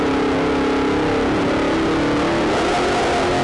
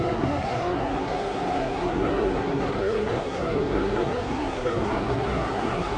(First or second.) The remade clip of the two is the second